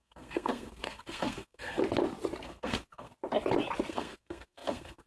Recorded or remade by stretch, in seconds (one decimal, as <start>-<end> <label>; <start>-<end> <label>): 0.0-1.8 remade; 1.8-2.4 recorded; 2.4-3.1 remade; 3.1-3.9 recorded; 3.9-5.1 remade